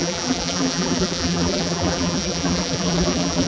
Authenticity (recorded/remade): remade